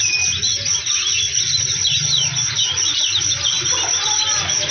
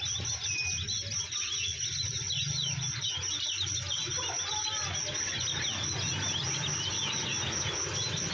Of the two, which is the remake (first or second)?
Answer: first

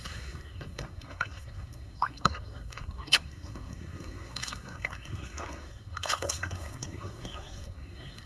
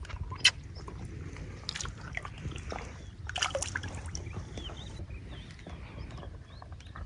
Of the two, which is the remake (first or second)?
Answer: first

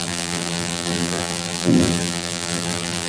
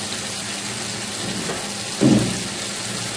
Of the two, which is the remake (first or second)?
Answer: first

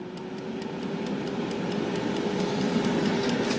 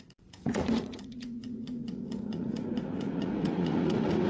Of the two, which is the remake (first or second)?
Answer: second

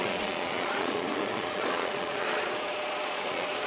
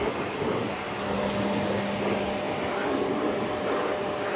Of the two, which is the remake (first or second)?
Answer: first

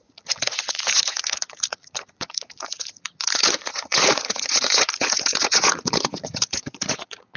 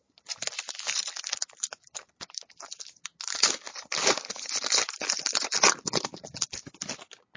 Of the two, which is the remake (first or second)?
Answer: first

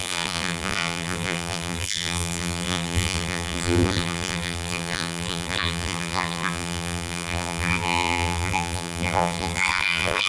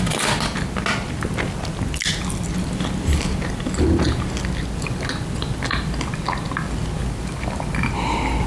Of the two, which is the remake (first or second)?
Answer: first